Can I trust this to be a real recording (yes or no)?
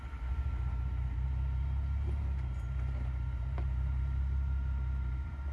no